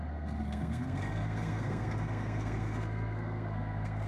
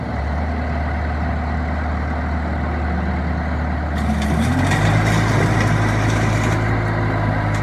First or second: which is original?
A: second